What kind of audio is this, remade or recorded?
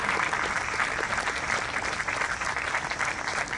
recorded